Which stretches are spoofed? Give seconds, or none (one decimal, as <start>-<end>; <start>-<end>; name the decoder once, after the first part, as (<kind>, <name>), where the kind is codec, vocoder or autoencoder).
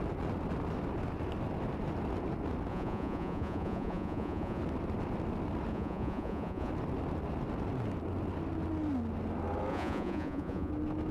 2.7-4.6 (vocoder, Vocos); 5.7-6.7; 9.7-10.7